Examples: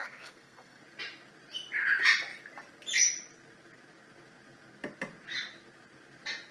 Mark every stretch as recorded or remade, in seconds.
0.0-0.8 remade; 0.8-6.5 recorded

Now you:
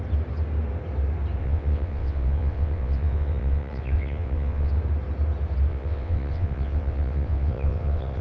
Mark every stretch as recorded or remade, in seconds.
0.0-1.4 recorded; 1.4-4.7 remade; 4.7-5.7 recorded; 5.7-8.2 remade

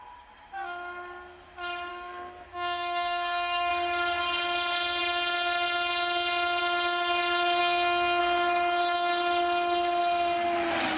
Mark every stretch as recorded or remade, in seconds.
0.0-1.9 recorded; 1.9-3.7 remade; 3.7-7.6 recorded; 7.6-8.2 remade; 8.2-11.0 recorded

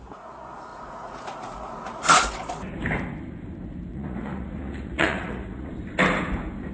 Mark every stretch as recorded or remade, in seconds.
0.0-0.7 recorded; 0.7-2.3 remade; 2.3-3.9 recorded; 3.9-5.7 remade; 5.7-6.7 recorded

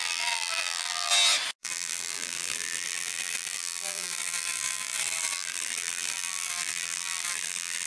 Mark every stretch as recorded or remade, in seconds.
0.0-1.1 remade; 1.1-1.6 recorded; 1.6-7.9 remade

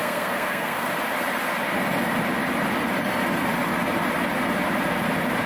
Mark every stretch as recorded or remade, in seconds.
0.0-0.9 remade; 0.9-5.5 recorded

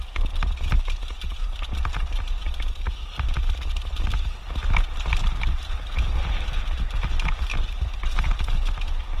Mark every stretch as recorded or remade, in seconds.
0.0-9.2 recorded

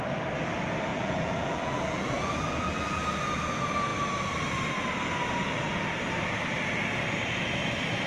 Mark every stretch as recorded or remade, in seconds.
0.0-0.9 recorded; 0.9-3.0 remade; 3.0-8.1 recorded